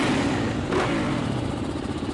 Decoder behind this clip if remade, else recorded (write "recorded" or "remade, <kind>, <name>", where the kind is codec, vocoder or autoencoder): remade, vocoder, BigVGAN v2